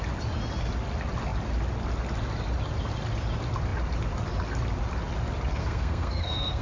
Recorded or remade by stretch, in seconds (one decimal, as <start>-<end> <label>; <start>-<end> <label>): 0.0-5.6 recorded; 5.6-6.6 remade